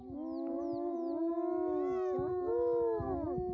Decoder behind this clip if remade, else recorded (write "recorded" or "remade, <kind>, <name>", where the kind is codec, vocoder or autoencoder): recorded